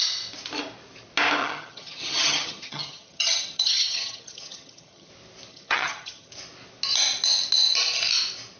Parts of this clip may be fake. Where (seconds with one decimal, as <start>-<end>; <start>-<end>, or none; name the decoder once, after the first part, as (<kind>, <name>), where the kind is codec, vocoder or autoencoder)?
1.4-5.1 (vocoder, HiFi-GAN); 5.5-6.3